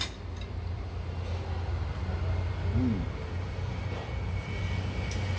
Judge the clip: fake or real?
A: real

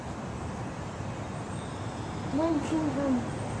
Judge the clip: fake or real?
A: real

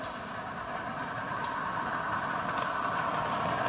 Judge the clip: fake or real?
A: real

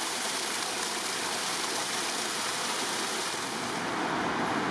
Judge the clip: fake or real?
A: real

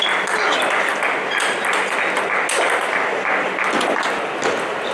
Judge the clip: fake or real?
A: real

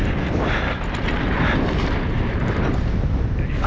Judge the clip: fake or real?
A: real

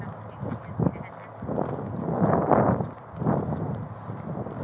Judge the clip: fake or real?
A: real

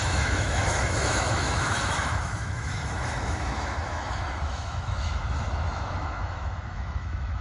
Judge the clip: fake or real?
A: fake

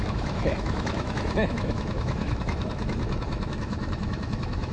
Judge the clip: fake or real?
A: fake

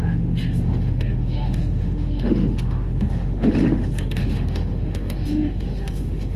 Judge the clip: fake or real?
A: fake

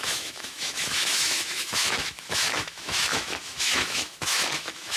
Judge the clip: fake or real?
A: fake